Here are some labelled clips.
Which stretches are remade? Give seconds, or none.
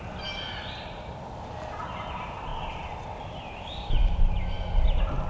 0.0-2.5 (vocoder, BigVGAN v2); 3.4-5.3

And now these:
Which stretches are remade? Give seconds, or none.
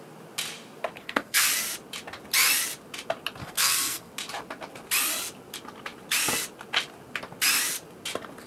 1.0-1.5 (codec, SNAC); 3.4-4.1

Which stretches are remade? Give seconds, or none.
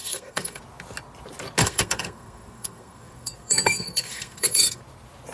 0.0-0.6 (codec, SNAC); 1.6-4.8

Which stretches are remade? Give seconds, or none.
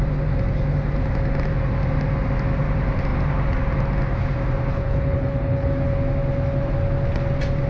4.7-5.7 (codec, HILCodec)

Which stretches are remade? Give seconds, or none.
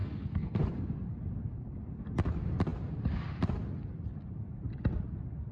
0.0-0.6 (codec, SNAC)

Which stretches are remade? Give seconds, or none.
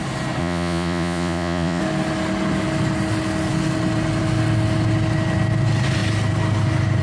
0.4-1.8 (vocoder, Vocos)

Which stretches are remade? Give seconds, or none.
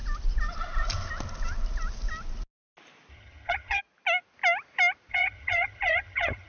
3.1-3.8 (vocoder, HiFi-GAN); 5.1-6.5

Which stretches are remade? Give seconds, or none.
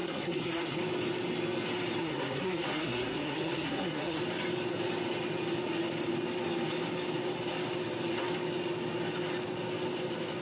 0.0-0.8 (codec, SNAC); 2.0-4.2